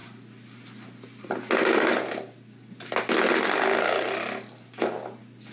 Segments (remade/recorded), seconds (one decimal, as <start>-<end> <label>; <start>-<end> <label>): 0.0-5.5 recorded